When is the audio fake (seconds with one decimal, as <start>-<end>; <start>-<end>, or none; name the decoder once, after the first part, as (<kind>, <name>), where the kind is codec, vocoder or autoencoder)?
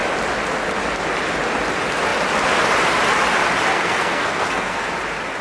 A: 3.7-4.9 (codec, SNAC)